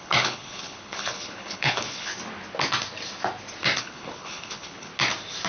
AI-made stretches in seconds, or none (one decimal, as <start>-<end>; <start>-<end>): 0.0-2.1; 3.8-4.9